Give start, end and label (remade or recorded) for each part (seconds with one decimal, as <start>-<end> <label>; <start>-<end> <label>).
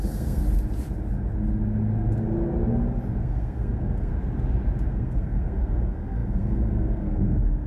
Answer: 0.0-0.4 remade; 0.4-3.2 recorded; 3.2-4.1 remade; 4.1-4.9 recorded; 4.9-7.7 remade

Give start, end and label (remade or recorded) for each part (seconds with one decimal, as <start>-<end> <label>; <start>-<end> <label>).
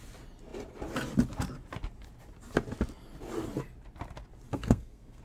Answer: 0.0-4.5 recorded; 4.5-5.2 remade